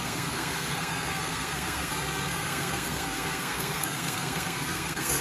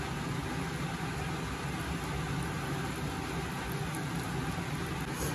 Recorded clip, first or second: second